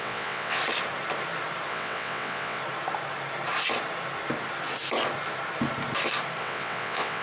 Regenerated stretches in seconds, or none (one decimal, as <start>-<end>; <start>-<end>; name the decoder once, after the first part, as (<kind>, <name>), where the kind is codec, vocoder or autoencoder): 0.0-0.6 (vocoder, WaveNeXt); 1.7-2.6; 6.4-7.2